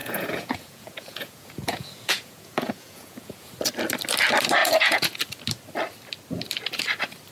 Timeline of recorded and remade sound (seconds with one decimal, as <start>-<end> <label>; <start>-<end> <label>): 0.0-3.5 remade; 3.5-4.6 recorded; 4.6-5.2 remade; 5.2-7.3 recorded